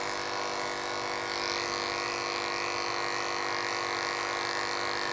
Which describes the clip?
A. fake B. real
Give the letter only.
B